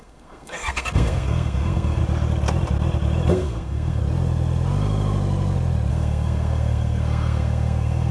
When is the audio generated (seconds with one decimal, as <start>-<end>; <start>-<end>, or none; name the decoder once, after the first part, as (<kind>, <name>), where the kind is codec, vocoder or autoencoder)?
0.0-2.0 (codec, SNAC); 3.3-4.0; 5.9-8.1